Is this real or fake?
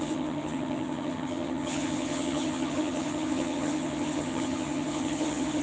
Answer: fake